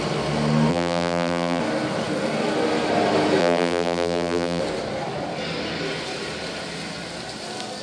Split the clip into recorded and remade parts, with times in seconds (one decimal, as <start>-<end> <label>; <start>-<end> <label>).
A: 0.0-0.7 recorded; 0.7-1.6 remade; 1.6-3.4 recorded; 3.4-4.6 remade; 4.6-7.8 recorded